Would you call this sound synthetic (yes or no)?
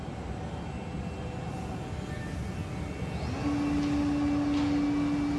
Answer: no